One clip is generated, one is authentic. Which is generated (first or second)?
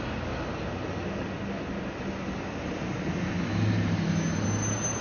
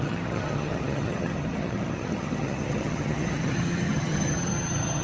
second